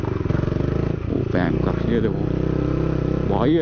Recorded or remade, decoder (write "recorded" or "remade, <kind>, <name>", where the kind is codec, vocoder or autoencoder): recorded